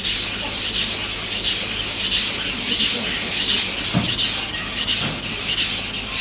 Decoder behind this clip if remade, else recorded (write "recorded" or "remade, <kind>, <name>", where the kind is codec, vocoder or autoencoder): recorded